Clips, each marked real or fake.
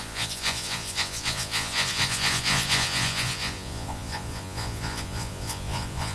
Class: fake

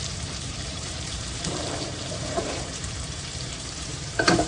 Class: fake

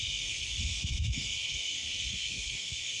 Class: fake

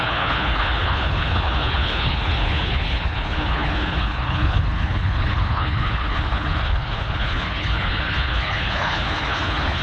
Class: fake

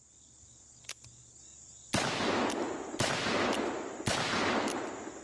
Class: real